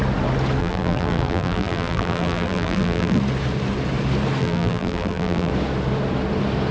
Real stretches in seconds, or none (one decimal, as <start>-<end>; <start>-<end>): 0.0-0.6; 3.2-4.4; 5.5-6.7